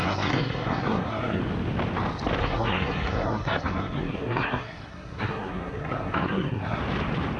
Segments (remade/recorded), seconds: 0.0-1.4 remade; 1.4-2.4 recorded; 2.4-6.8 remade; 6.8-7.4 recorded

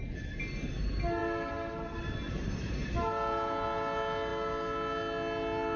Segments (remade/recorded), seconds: 0.0-5.8 recorded

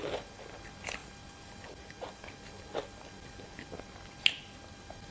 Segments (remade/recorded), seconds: 0.0-5.1 recorded